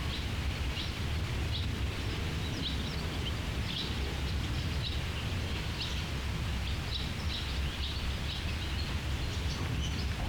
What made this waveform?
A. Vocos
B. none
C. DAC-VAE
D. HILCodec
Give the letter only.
B